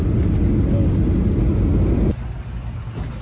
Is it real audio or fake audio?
real